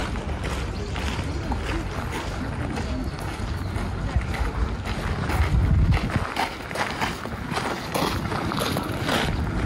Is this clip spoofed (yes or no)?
no